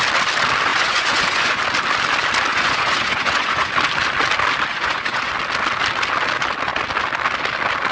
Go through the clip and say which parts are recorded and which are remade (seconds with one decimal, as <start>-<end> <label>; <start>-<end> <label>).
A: 0.0-0.7 recorded; 0.7-1.6 remade; 1.6-2.5 recorded; 2.5-3.7 remade; 3.7-4.7 recorded; 4.7-5.3 remade; 5.3-7.9 recorded